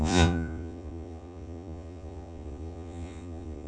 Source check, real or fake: fake